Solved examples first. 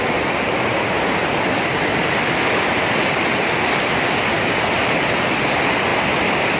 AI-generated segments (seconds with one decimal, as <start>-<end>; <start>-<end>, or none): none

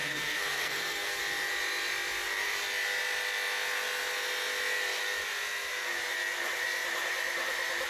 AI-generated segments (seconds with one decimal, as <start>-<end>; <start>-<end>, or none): 0.0-1.2

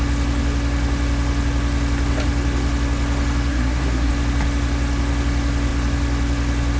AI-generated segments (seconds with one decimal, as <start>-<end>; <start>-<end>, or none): 3.5-4.1

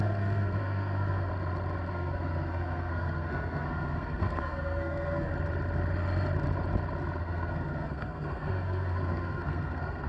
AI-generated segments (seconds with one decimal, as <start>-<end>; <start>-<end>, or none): 0.0-1.3; 1.9-5.3; 7.2-10.1

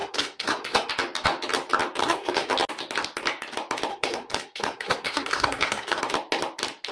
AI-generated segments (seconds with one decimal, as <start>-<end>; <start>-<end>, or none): 0.0-0.9; 2.0-2.5; 3.9-6.0